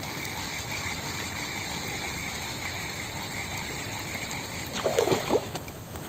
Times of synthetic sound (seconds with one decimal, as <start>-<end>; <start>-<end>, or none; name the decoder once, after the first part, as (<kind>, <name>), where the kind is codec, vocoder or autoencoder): 2.2-3.1 (autoencoder, DAC-VAE); 4.9-6.1